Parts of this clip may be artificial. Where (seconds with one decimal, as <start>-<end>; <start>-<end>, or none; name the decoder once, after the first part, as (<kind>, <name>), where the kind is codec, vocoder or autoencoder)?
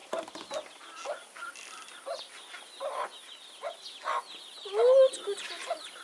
none